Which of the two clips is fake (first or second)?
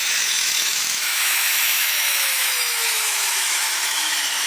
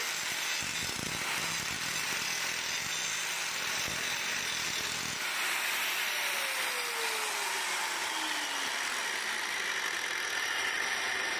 first